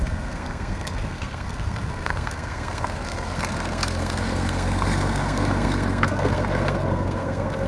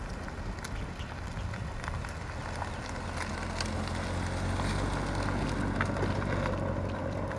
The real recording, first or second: second